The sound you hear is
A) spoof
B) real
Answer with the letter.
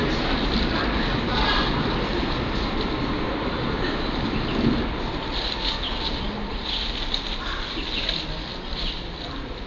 B